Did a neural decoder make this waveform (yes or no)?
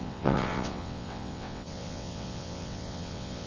yes